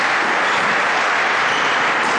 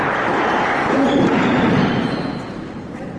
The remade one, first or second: second